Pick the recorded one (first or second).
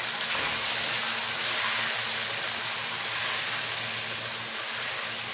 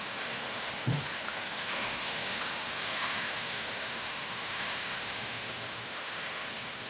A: first